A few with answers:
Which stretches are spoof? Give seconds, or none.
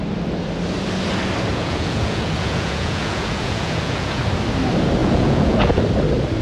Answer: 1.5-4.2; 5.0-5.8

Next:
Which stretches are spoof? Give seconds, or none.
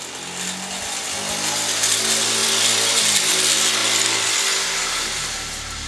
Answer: none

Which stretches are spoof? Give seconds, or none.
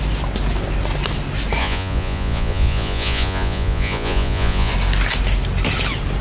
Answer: 1.6-4.7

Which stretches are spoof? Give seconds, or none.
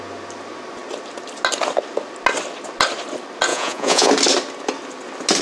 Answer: 3.5-4.1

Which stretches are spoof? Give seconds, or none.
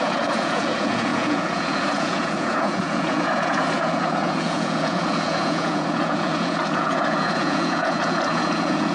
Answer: 0.0-8.9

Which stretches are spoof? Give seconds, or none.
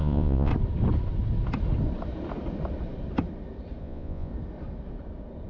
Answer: 0.0-0.5; 3.8-4.3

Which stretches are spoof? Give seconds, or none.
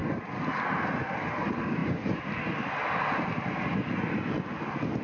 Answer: none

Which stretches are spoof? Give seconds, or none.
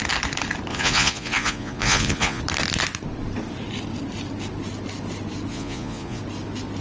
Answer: 0.7-2.4; 5.5-6.2